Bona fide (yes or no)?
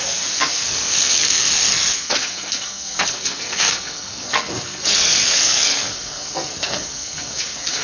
no